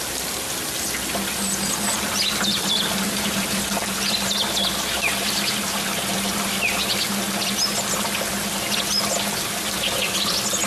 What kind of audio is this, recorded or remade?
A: recorded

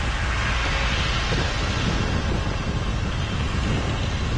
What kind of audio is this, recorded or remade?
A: recorded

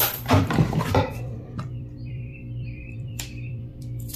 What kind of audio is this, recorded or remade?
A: remade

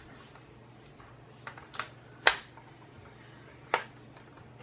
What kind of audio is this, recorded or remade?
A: recorded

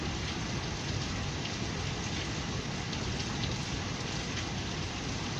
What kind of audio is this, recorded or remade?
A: recorded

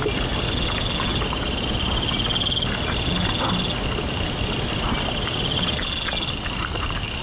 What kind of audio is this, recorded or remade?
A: recorded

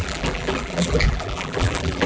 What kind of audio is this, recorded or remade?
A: remade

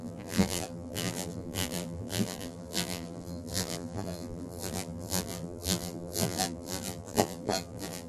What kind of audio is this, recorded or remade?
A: remade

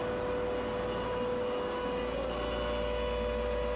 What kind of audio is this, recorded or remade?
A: recorded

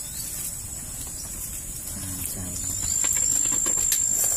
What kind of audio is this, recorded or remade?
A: remade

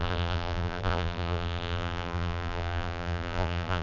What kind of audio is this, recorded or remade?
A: remade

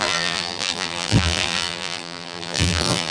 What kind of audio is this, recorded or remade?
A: remade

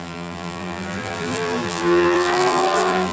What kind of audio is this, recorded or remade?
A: remade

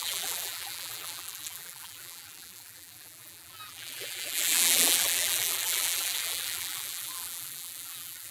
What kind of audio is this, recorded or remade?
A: remade